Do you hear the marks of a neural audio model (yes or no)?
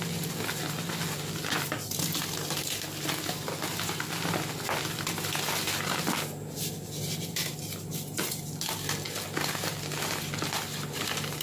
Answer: no